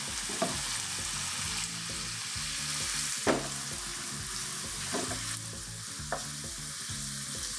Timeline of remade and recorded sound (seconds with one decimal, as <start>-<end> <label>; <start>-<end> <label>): 0.0-7.6 recorded